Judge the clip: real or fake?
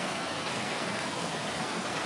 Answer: fake